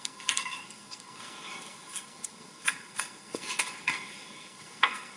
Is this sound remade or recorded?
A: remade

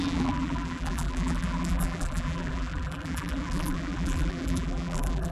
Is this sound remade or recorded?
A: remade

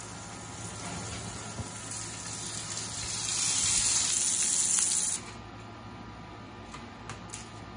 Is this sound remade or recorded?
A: recorded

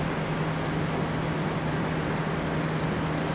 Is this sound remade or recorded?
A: recorded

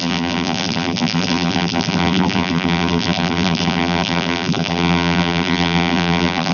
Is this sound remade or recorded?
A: remade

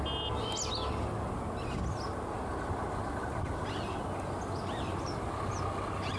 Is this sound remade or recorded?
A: recorded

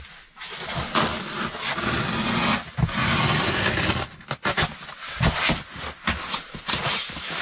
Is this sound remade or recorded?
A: recorded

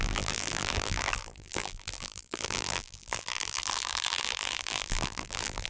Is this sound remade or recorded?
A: remade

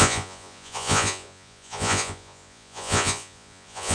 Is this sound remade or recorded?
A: remade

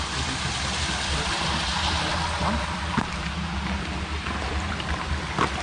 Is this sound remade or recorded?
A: recorded